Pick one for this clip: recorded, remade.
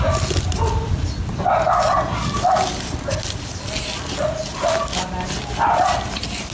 recorded